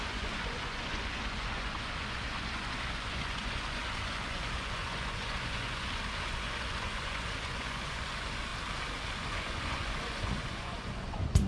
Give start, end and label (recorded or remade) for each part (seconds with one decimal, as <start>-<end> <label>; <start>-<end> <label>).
0.0-8.5 remade; 8.5-9.1 recorded; 9.1-11.5 remade